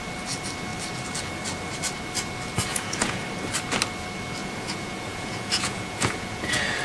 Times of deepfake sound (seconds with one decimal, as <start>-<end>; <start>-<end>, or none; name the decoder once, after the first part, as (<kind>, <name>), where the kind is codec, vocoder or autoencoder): 2.7-3.2 (vocoder, Vocos); 4.4-6.8